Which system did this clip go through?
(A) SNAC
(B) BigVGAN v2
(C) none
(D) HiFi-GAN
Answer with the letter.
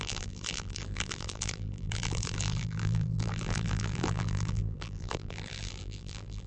B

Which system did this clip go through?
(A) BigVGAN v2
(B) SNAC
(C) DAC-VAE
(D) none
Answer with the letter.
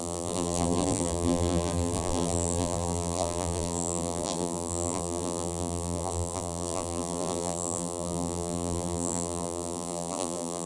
A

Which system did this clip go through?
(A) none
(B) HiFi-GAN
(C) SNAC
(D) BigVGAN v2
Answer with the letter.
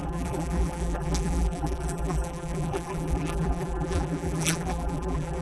D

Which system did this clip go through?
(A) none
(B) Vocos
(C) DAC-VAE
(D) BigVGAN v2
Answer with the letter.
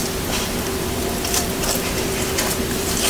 D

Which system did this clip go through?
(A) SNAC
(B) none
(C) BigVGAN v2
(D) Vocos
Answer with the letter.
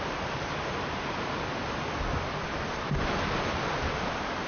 B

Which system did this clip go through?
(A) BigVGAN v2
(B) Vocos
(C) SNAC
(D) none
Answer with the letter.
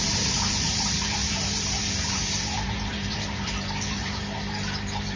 A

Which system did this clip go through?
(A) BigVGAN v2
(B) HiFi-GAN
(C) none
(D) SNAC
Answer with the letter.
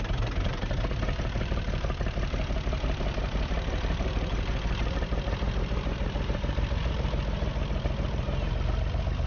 A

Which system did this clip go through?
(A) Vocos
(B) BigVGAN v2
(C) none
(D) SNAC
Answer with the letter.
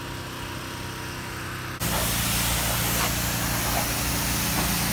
C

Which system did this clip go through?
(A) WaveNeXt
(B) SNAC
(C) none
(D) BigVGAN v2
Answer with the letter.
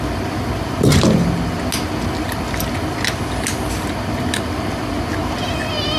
C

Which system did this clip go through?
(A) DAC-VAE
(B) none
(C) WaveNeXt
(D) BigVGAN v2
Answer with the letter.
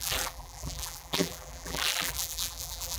D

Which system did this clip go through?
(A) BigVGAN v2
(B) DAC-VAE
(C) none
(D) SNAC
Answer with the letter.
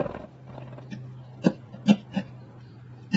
C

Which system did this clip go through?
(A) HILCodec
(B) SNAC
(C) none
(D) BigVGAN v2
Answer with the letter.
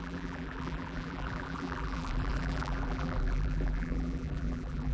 D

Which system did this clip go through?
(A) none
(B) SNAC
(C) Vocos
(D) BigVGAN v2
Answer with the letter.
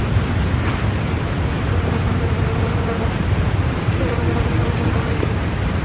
D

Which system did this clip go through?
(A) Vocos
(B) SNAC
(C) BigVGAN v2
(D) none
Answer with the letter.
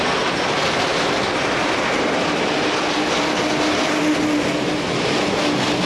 D